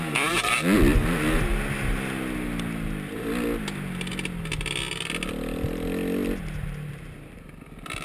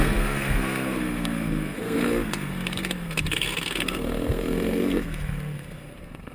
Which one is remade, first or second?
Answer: second